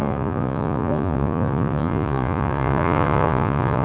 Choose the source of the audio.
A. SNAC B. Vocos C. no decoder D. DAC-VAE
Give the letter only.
B